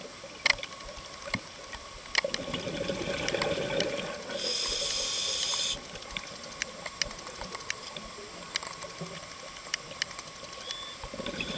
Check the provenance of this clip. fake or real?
real